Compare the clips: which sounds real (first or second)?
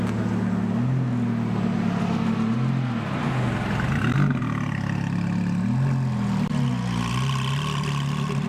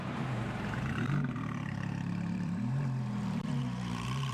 first